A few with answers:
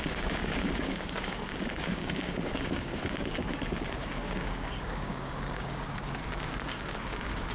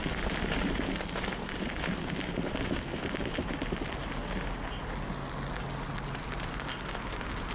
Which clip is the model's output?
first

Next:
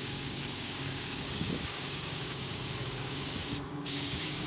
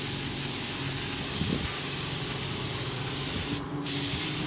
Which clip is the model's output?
first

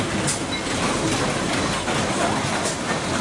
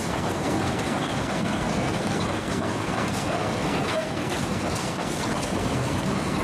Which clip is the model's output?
second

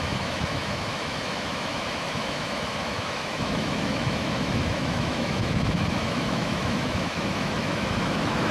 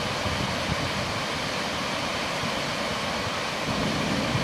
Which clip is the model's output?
first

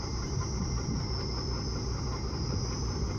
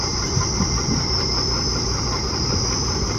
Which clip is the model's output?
second